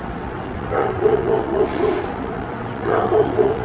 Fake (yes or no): yes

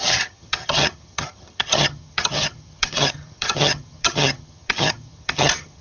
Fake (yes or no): yes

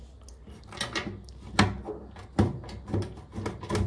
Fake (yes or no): no